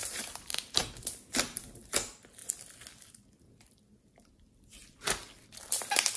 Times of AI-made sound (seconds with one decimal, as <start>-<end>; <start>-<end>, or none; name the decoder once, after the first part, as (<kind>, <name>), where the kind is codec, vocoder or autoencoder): 0.0-1.1 (vocoder, BigVGAN v2)